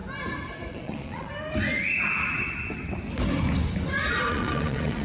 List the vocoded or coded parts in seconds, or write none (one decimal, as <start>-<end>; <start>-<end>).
0.7-1.3; 4.3-5.0